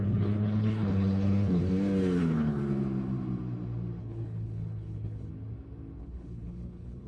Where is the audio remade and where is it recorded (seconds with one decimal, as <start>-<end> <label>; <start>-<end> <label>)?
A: 0.0-1.6 remade; 1.6-2.2 recorded; 2.2-2.6 remade; 2.6-4.0 recorded; 4.0-5.3 remade; 5.3-6.0 recorded; 6.0-7.1 remade